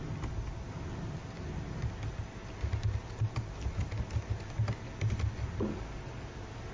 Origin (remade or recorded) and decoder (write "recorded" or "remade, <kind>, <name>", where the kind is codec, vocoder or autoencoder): recorded